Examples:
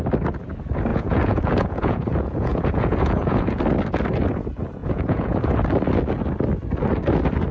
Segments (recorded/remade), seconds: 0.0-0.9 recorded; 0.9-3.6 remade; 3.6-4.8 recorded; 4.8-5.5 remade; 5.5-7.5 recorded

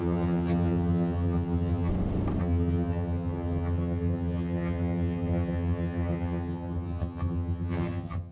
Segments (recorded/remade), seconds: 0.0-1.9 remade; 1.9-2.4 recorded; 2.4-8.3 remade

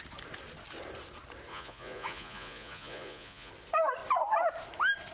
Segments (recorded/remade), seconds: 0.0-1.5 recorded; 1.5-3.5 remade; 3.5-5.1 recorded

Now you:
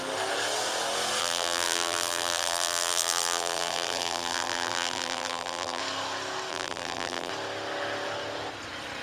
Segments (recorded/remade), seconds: 0.0-1.2 recorded; 1.2-5.8 remade; 5.8-6.5 recorded; 6.5-7.3 remade; 7.3-9.0 recorded

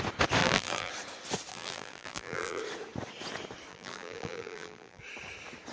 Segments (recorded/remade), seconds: 0.0-0.4 recorded; 0.4-0.9 remade; 0.9-1.5 recorded; 1.5-2.6 remade; 2.6-3.7 recorded; 3.7-5.0 remade; 5.0-5.7 recorded